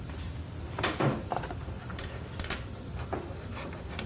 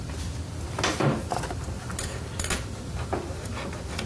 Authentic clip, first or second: second